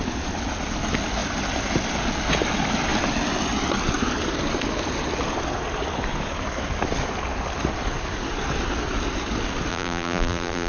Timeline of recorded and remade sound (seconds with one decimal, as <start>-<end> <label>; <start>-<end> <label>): 0.0-9.7 recorded; 9.7-10.7 remade